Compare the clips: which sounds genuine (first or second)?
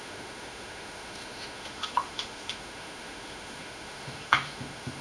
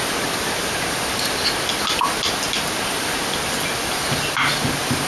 second